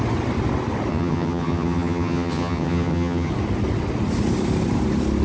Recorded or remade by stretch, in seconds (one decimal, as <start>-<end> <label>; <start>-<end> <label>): 0.0-0.9 recorded; 0.9-3.3 remade; 3.3-5.2 recorded